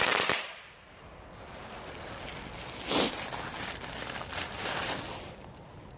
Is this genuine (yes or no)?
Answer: no